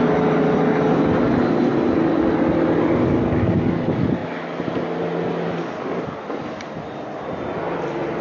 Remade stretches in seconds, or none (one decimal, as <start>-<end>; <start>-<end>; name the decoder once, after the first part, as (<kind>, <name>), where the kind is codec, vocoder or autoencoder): none